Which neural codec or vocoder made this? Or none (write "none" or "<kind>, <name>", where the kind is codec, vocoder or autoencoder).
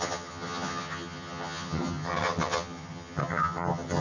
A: vocoder, HiFi-GAN